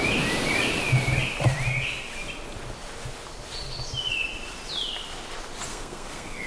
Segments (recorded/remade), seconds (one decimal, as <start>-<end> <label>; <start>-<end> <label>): 0.0-5.7 recorded; 5.7-6.5 remade